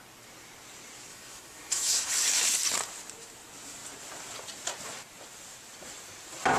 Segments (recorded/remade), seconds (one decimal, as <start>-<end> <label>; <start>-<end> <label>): 0.0-1.1 recorded; 1.1-2.1 remade; 2.1-6.6 recorded